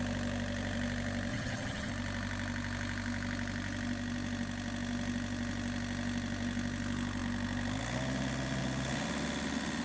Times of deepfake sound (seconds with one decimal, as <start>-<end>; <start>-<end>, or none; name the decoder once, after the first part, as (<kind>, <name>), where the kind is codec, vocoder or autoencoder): 1.3-1.9 (vocoder, HiFi-GAN)